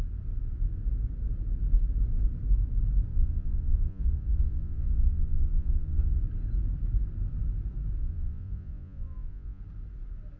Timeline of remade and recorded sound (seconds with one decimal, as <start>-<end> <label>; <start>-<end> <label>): 0.0-3.1 recorded; 3.1-6.2 remade; 6.2-8.0 recorded; 8.0-9.6 remade; 9.6-10.4 recorded